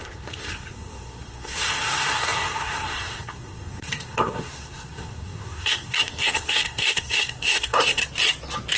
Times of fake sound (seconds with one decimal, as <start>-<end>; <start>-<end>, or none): 0.0-8.0